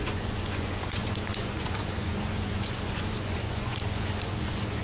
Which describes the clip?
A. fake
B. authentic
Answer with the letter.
A